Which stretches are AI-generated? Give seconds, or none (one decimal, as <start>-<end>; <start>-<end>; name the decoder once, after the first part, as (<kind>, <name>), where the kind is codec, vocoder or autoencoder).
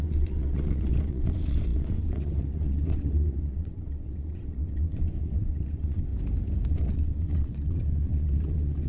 0.0-6.1 (vocoder, WaveNeXt); 6.7-8.9